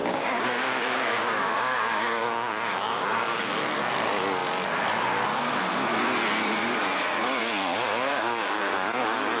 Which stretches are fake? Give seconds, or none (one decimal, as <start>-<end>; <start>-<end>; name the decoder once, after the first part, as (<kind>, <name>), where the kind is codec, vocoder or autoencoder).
0.0-3.5 (codec, DAC); 8.1-8.6